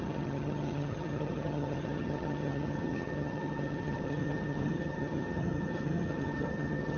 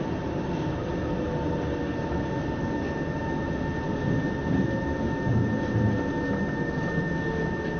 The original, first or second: second